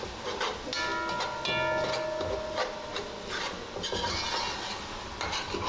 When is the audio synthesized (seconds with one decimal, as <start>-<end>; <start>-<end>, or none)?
none